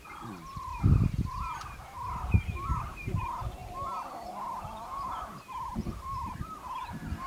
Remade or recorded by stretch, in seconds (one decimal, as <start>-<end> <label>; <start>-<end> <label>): 0.0-0.7 remade; 0.7-2.8 recorded; 2.8-7.3 remade